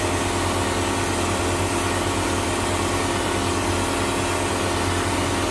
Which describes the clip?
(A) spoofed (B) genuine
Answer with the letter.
B